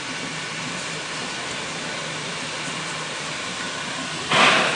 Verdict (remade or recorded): recorded